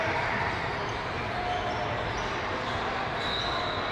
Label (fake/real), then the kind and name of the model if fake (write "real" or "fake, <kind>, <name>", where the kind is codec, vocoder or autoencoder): real